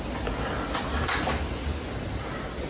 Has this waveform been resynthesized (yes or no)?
no